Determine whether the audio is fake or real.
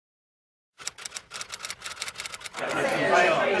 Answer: real